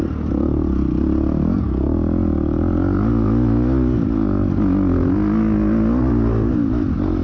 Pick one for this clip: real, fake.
real